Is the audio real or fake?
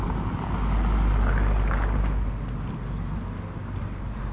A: real